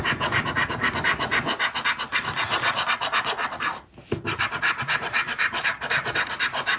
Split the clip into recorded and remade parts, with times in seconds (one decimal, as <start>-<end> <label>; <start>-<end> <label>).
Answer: 0.0-1.3 remade; 1.3-4.8 recorded; 4.8-6.8 remade